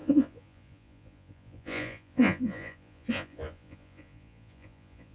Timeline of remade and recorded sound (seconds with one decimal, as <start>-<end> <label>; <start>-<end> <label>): 0.0-5.1 remade